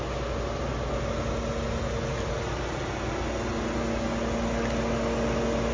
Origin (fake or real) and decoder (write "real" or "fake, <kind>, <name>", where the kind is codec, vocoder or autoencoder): real